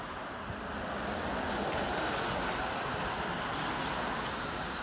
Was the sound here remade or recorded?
recorded